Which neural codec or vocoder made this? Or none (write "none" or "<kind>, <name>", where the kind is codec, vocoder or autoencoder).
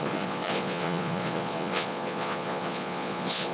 vocoder, Vocos